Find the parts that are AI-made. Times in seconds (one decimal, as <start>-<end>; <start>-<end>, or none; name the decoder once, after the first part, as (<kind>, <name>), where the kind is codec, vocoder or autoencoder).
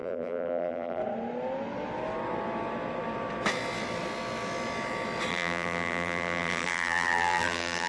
0.0-1.0 (vocoder, BigVGAN v2); 5.3-7.9